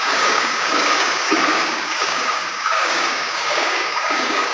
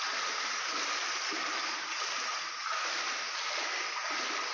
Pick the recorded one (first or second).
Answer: second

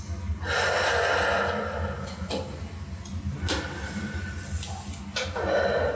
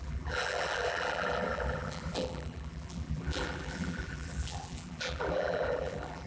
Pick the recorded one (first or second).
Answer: first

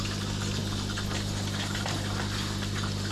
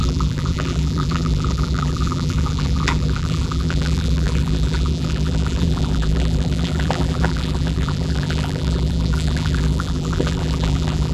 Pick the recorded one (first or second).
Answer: first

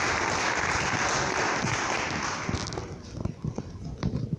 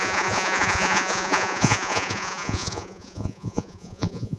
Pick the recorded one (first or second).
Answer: first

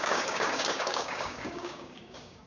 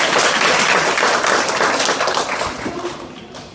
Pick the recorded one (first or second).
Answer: second